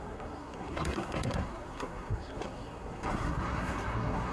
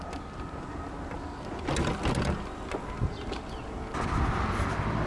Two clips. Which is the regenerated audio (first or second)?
first